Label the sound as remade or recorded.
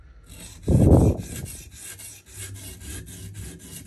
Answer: recorded